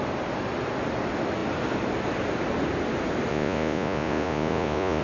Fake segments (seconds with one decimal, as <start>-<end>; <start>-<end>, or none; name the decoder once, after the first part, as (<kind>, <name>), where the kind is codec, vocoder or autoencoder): 3.3-5.0 (vocoder, Vocos)